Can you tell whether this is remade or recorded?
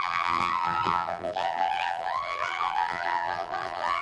remade